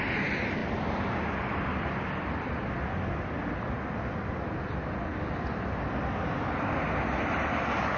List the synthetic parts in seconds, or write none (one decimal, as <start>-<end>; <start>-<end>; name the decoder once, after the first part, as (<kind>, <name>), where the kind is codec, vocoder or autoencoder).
none